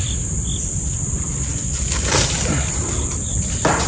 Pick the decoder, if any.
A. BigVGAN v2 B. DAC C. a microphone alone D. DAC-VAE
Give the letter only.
C